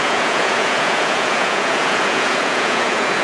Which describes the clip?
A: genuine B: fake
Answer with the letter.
B